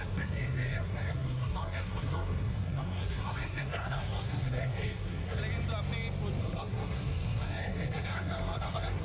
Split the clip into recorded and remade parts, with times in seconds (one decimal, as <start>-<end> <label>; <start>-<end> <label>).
0.0-5.4 remade; 5.4-6.4 recorded; 6.4-9.0 remade